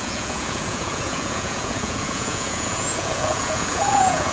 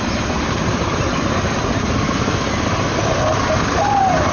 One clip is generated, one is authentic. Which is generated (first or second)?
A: first